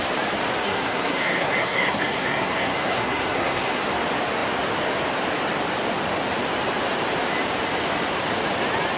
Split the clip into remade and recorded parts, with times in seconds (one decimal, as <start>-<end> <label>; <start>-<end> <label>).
0.0-0.6 recorded; 0.6-3.8 remade; 3.8-9.0 recorded